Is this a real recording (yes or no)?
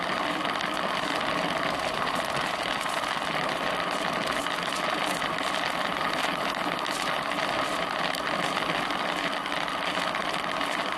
yes